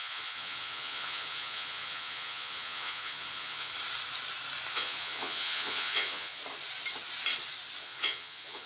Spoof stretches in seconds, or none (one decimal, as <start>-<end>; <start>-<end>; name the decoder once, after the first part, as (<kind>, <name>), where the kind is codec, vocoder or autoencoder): 0.0-3.7 (vocoder, Vocos); 4.7-6.4; 7.8-8.7